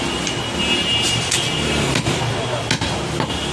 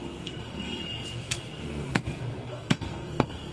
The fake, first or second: second